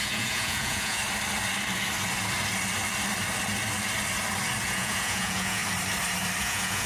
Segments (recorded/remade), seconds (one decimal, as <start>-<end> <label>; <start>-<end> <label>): 0.0-1.0 remade; 1.0-4.6 recorded; 4.6-5.6 remade; 5.6-6.4 recorded; 6.4-6.9 remade